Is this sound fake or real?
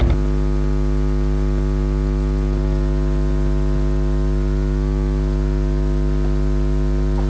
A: real